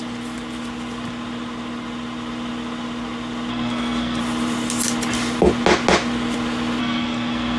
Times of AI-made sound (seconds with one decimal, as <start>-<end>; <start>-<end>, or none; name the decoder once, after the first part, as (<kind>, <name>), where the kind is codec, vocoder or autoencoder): 3.5-4.2 (codec, SNAC); 6.8-7.6